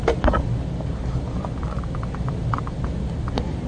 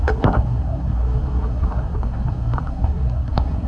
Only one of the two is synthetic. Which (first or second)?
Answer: second